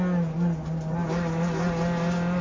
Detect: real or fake real